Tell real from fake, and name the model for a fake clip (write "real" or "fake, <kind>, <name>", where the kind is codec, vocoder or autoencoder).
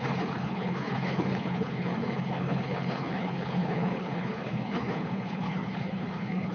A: fake, codec, HILCodec